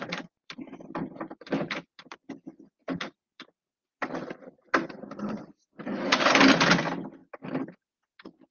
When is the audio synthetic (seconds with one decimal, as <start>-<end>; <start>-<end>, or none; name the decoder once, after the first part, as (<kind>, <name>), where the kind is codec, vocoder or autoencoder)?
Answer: 0.0-3.9 (vocoder, BigVGAN v2); 5.4-7.2